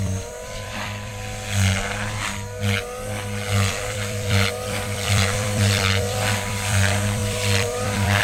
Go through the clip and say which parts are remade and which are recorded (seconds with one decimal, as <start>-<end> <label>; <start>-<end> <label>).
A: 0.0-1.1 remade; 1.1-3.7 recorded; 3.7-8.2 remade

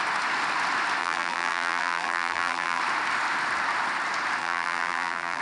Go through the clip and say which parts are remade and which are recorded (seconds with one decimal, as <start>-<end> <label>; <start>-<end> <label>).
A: 0.0-1.0 recorded; 1.0-2.8 remade; 2.8-4.4 recorded; 4.4-5.4 remade

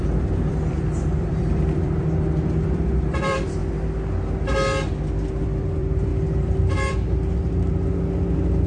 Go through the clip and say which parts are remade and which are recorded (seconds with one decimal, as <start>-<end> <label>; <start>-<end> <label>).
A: 0.0-3.6 remade; 3.6-5.3 recorded; 5.3-6.1 remade; 6.1-8.7 recorded

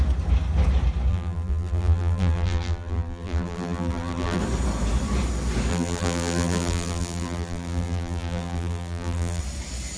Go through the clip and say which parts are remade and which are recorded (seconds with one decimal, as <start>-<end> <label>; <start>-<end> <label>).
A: 0.0-1.1 recorded; 1.1-4.4 remade; 4.4-5.7 recorded; 5.7-9.4 remade; 9.4-10.0 recorded

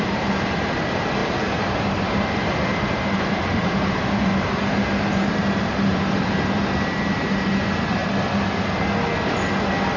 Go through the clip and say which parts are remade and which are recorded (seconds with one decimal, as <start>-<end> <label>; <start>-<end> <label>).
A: 0.0-8.0 remade; 8.0-10.0 recorded

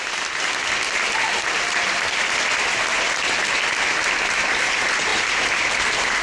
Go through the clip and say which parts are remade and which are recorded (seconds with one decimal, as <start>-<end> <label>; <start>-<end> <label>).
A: 0.0-6.2 recorded